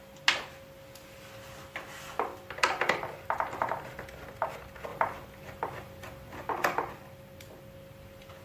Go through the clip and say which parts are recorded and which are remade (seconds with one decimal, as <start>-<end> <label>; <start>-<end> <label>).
0.0-8.4 recorded